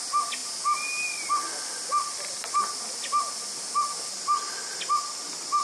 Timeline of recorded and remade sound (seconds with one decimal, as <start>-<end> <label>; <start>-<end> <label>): 0.0-5.6 recorded